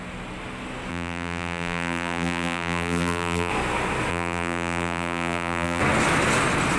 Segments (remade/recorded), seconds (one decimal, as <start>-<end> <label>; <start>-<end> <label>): 0.0-0.9 recorded; 0.9-3.5 remade; 3.5-4.1 recorded; 4.1-5.8 remade; 5.8-6.8 recorded

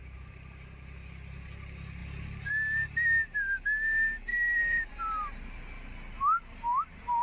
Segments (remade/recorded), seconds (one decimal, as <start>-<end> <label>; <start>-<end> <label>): 0.0-4.3 recorded; 4.3-4.9 remade; 4.9-7.2 recorded

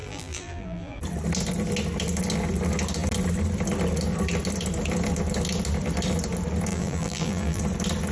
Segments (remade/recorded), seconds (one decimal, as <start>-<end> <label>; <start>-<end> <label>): 0.0-1.0 remade; 1.0-6.7 recorded; 6.7-7.6 remade; 7.6-8.1 recorded

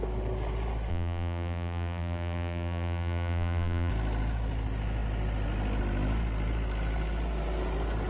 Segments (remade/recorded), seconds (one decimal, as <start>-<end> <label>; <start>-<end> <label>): 0.0-0.9 recorded; 0.9-3.9 remade; 3.9-8.1 recorded